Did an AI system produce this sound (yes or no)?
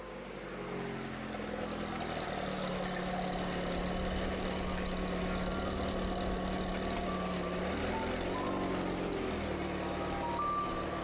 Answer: no